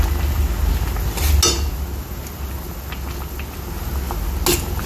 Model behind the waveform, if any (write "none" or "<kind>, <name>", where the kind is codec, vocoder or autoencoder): none